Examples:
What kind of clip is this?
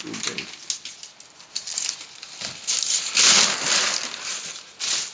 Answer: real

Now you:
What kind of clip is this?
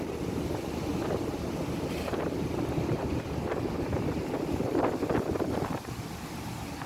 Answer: real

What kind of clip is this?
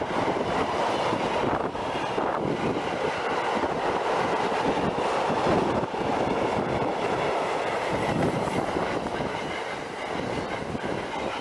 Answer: real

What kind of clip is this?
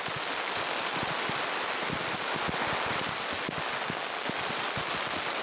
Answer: real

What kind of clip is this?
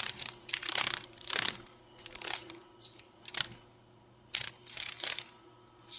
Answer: fake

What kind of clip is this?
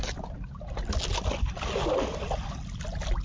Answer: real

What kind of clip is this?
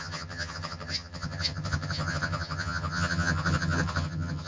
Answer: fake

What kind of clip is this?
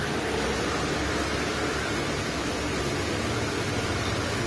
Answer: real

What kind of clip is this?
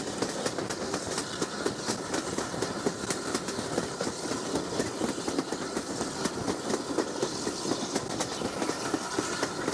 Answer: real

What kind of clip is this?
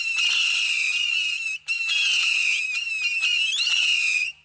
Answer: real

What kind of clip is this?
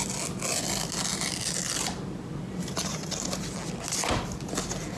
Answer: real